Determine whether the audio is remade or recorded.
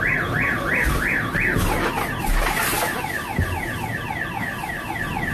recorded